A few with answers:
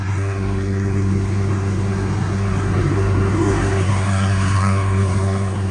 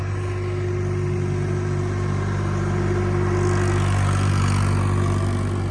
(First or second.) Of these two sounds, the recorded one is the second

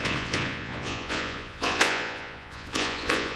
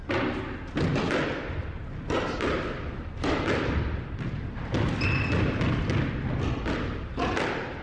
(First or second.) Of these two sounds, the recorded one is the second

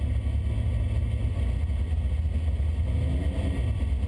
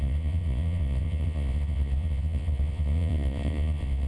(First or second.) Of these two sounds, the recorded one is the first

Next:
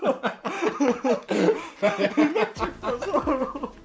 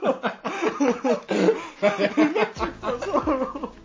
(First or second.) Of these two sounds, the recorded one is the second